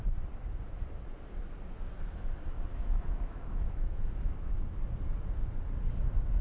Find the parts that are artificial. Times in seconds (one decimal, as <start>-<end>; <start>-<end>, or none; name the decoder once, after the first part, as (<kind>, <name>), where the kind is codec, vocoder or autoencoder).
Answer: 2.7-4.8 (autoencoder, DAC-VAE)